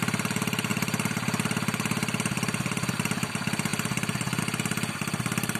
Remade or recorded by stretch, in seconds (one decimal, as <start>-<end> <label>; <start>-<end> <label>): 0.0-5.6 recorded